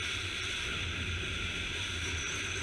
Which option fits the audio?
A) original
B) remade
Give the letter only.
A